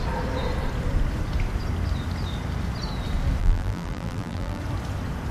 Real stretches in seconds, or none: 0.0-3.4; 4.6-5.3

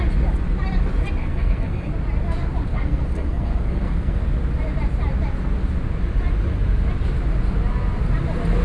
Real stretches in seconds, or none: 0.0-1.2; 1.9-2.7; 4.2-8.6

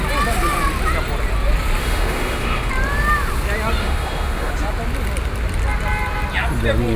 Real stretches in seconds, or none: 0.0-1.8; 2.7-3.8; 4.5-7.0

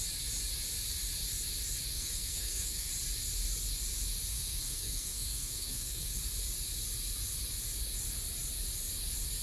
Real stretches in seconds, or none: 0.0-1.9; 2.9-4.3; 6.2-9.4

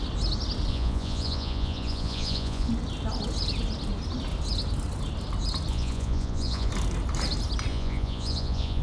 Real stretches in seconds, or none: 0.0-0.7; 2.7-5.7; 6.7-7.7

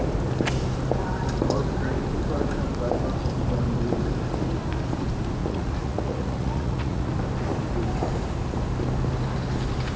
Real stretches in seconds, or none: 0.0-5.4; 7.1-10.0

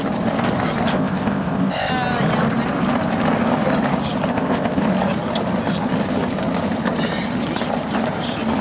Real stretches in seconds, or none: 0.0-0.9; 1.9-4.3; 4.8-8.6

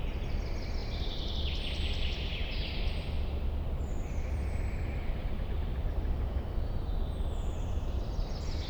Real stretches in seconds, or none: 0.0-5.2; 8.0-8.7